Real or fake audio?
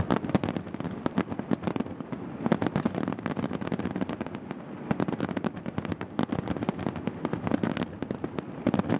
real